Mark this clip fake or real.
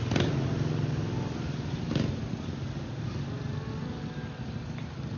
real